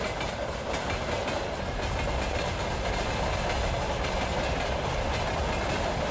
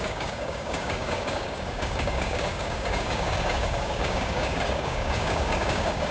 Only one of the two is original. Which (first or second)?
first